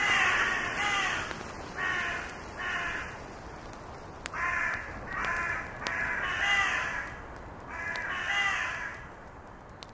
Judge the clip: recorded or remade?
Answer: recorded